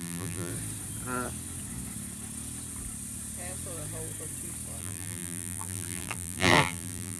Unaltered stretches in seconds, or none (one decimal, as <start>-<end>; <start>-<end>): 0.5-4.8